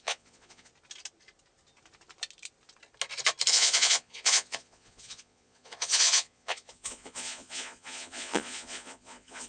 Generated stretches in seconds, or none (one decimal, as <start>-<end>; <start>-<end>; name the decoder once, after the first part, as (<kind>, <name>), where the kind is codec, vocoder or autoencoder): 0.0-0.7 (vocoder, Vocos); 3.5-9.5